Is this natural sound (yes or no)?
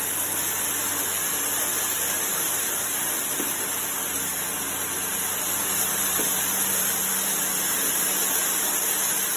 yes